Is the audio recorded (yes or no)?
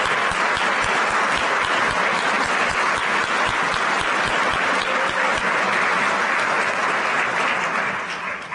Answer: yes